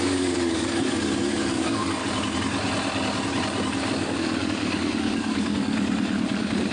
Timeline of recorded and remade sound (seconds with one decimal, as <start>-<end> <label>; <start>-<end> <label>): 0.0-2.0 remade; 2.0-3.9 recorded; 3.9-6.7 remade